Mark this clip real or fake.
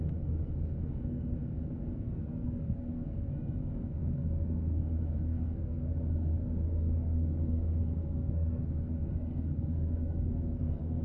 fake